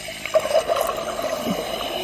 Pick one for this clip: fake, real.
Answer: real